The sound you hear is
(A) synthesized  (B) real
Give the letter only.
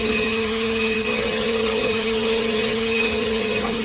A